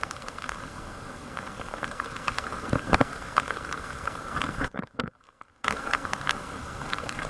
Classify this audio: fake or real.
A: fake